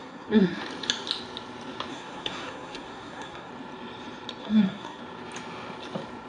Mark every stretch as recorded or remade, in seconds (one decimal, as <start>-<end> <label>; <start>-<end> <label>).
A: 0.0-0.6 remade; 0.6-1.9 recorded; 1.9-3.5 remade; 3.5-4.4 recorded; 4.4-5.0 remade; 5.0-6.3 recorded